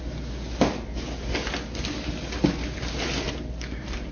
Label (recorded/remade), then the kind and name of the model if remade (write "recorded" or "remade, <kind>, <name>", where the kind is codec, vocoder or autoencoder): recorded